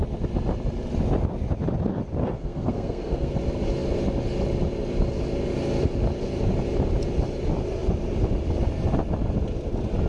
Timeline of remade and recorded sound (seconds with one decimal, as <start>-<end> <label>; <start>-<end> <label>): 0.0-2.2 recorded; 2.2-3.3 remade; 3.3-10.1 recorded